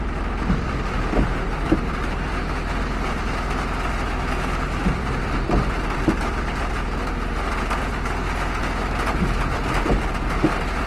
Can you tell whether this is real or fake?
real